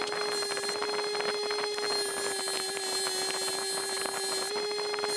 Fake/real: real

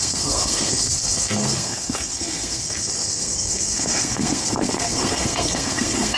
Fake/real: fake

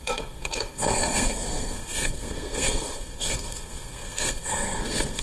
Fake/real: fake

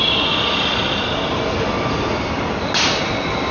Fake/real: real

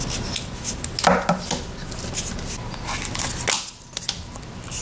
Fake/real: real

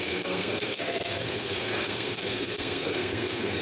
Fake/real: fake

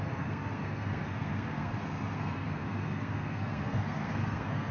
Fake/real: fake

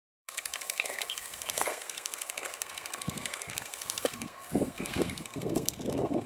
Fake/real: fake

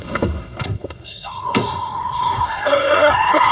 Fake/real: fake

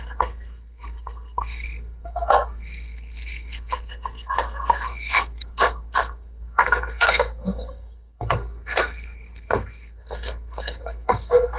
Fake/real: fake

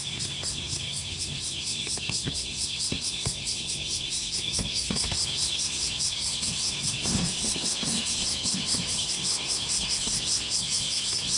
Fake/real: fake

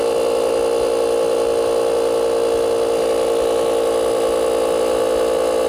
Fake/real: real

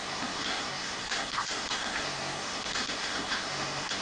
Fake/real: fake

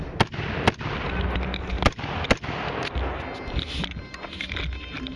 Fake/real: real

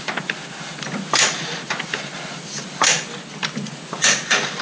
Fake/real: real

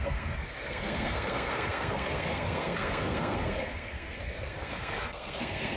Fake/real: fake